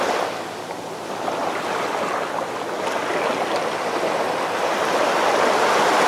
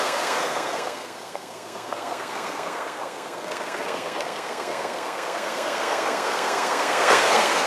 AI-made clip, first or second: second